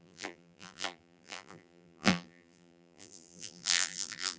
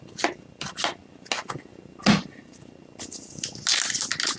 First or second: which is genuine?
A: second